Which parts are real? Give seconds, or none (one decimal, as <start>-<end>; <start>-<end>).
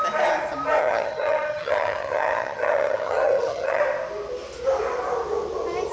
0.0-0.8; 3.8-5.9